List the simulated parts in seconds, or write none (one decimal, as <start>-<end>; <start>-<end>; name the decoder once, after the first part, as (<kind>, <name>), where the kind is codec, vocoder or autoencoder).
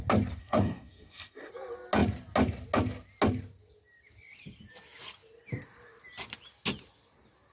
0.4-1.5 (codec, SNAC)